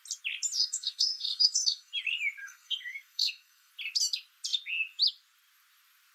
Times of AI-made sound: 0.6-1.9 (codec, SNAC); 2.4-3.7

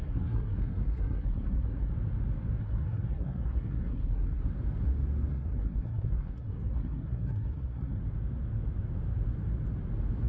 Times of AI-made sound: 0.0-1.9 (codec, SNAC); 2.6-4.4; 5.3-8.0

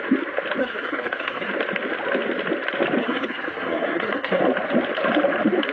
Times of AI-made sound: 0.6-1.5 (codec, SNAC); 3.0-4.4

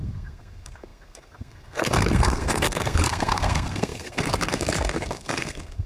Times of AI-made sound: 0.0-5.9 (codec, SNAC)

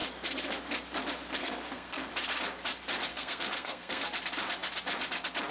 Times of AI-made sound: 1.4-2.1 (codec, SNAC); 3.1-4.0

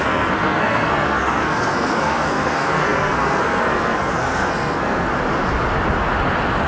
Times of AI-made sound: 0.0-5.1 (codec, SNAC)

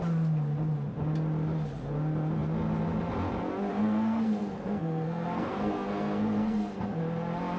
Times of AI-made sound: 3.7-7.0 (codec, SNAC)

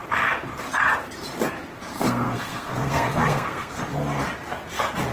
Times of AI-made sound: 1.9-3.8 (codec, SNAC)